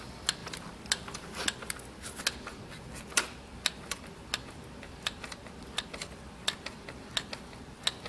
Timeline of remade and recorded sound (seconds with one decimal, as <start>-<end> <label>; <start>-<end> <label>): 0.0-8.1 recorded